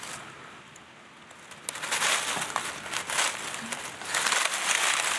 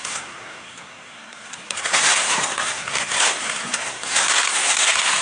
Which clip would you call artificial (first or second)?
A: second